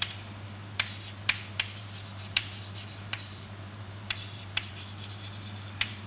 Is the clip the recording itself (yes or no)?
no